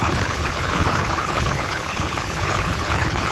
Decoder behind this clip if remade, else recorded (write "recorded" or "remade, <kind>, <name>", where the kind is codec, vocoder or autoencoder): remade, codec, HILCodec